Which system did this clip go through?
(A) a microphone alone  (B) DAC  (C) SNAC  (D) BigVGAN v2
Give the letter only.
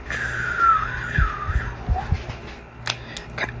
A